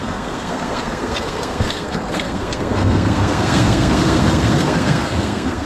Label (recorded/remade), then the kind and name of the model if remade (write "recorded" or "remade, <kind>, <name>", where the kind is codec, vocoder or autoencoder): remade, codec, SNAC